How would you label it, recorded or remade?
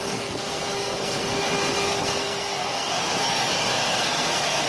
remade